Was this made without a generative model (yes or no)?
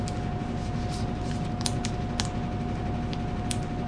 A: yes